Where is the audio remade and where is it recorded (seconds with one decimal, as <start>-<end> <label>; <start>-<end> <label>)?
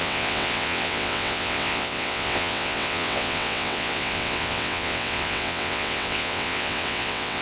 0.0-7.4 remade